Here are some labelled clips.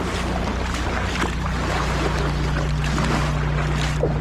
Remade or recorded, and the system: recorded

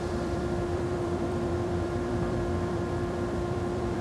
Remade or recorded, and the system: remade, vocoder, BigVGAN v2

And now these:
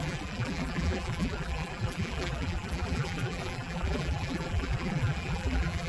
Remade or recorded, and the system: remade, vocoder, BigVGAN v2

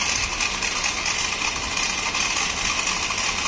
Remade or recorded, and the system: recorded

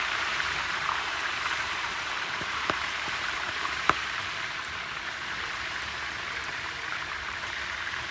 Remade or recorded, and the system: remade, vocoder, BigVGAN v2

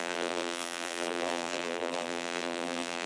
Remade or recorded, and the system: remade, vocoder, BigVGAN v2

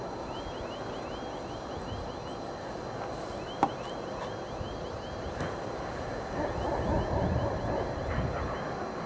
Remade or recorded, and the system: recorded